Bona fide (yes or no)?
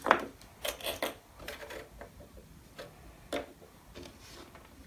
no